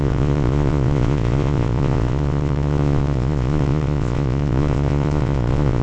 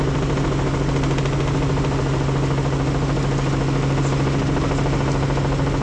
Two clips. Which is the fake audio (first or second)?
first